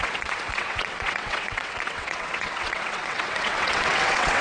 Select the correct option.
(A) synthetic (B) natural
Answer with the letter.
A